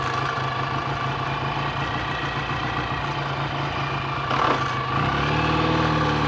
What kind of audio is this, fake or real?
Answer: real